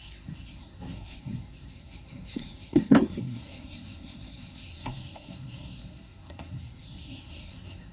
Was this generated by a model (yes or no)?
yes